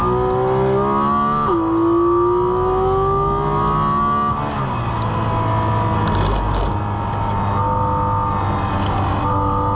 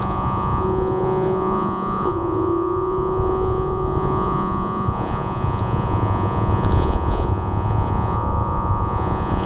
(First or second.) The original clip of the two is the first